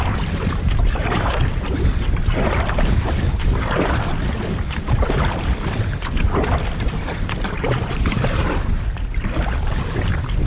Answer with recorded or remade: recorded